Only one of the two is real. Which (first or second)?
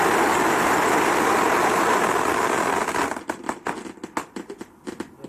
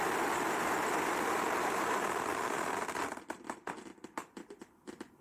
first